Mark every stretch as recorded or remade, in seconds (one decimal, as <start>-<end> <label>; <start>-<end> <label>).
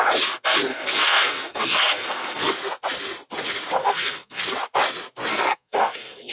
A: 0.0-0.7 recorded; 0.7-2.5 remade; 2.5-3.8 recorded; 3.8-4.4 remade; 4.4-5.3 recorded; 5.3-6.3 remade